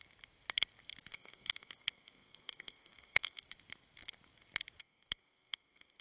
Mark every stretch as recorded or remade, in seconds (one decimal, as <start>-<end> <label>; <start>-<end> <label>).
0.0-1.1 recorded; 1.1-3.4 remade; 3.4-4.8 recorded; 4.8-6.0 remade